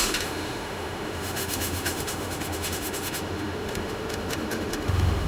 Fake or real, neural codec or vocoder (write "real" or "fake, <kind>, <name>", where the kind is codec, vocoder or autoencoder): fake, autoencoder, DAC-VAE